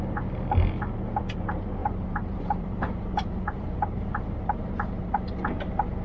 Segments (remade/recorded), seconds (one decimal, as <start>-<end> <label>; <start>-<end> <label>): 0.0-1.8 recorded; 1.8-5.4 remade; 5.4-6.0 recorded